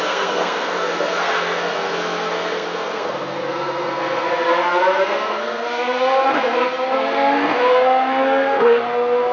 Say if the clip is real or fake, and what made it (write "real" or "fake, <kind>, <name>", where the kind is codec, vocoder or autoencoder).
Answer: fake, codec, SNAC